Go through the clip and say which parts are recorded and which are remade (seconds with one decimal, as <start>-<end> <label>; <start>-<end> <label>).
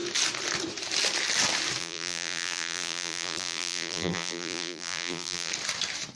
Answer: 0.0-1.8 recorded; 1.8-5.5 remade; 5.5-6.2 recorded